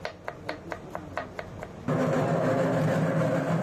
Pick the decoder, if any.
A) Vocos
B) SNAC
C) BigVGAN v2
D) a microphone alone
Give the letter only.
D